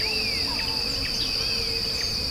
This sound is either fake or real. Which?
real